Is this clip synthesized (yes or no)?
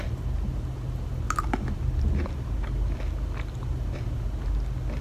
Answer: no